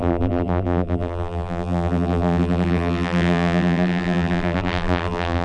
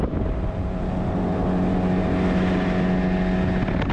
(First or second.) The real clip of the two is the second